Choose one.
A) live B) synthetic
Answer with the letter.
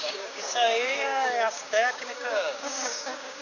B